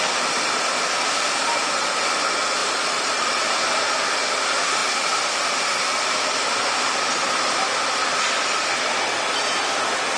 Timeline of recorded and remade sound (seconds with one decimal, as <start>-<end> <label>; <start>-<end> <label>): 0.0-2.6 recorded; 2.6-3.4 remade; 3.4-10.2 recorded